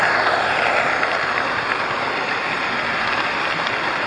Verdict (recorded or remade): recorded